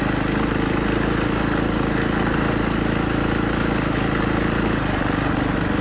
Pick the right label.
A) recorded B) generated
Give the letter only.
A